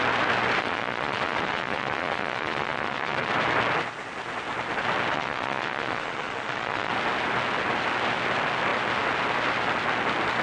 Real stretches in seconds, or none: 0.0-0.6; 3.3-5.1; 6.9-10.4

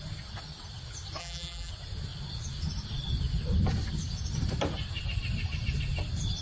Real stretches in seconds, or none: 0.0-1.2; 1.7-6.4

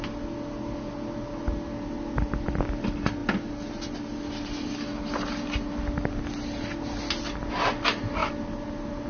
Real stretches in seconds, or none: 0.0-9.1

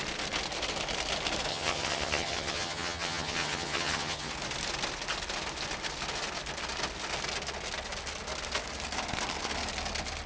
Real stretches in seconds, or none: 0.0-1.5; 4.3-10.3

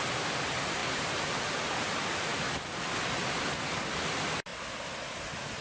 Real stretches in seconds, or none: 0.0-5.6

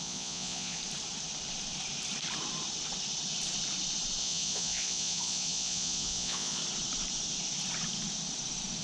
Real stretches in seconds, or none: 0.8-4.2; 6.6-8.8